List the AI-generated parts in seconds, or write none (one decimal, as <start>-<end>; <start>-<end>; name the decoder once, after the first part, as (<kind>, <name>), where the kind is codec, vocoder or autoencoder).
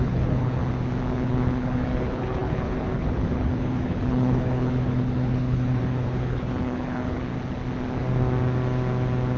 0.0-0.6 (codec, HILCodec); 1.1-7.3